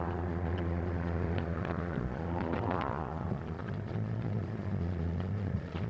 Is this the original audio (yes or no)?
no